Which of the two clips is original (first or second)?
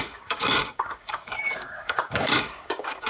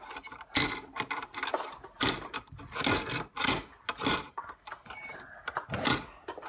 second